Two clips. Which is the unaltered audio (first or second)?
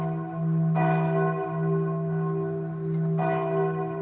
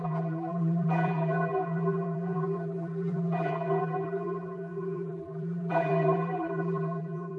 first